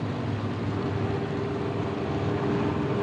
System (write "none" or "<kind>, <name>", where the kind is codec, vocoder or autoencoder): none